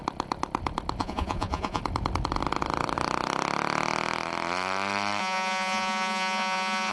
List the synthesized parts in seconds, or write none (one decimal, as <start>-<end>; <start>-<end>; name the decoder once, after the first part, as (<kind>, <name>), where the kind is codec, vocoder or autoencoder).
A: 1.0-1.8 (vocoder, Vocos); 5.2-6.9